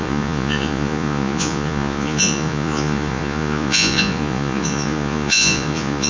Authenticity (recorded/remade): remade